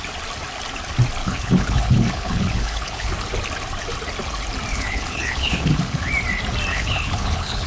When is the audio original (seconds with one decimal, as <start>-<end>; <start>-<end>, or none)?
0.0-1.2; 3.1-4.7; 6.1-6.7